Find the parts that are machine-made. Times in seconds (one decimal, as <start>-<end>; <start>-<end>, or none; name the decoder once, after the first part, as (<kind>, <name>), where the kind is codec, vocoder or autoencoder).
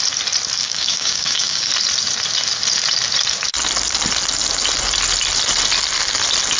0.6-1.7 (codec, DAC)